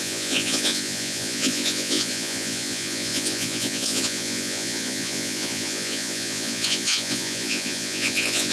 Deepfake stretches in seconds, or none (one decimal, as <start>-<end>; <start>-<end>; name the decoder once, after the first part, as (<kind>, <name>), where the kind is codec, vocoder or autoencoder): 0.0-8.5 (vocoder, Vocos)